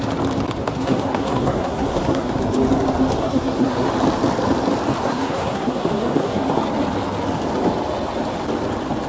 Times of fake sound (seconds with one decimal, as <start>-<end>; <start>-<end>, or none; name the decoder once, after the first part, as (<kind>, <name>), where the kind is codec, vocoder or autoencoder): 0.6-2.4 (codec, SNAC); 3.2-3.9; 5.0-6.6